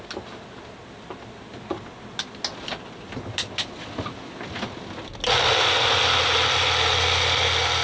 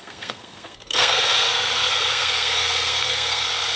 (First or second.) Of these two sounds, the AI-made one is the second